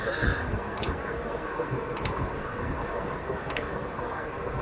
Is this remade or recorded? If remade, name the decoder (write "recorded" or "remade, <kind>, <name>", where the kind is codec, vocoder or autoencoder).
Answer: remade, codec, SNAC